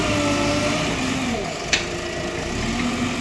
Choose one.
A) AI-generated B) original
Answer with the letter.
B